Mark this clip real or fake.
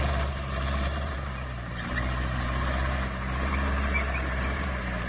fake